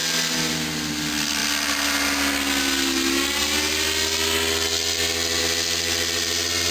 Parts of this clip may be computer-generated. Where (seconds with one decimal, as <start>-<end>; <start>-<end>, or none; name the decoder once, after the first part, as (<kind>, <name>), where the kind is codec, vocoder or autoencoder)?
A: none